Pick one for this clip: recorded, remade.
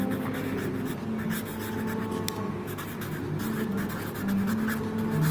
recorded